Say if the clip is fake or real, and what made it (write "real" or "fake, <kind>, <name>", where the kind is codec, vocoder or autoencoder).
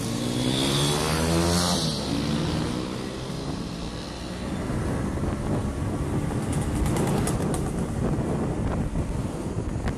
real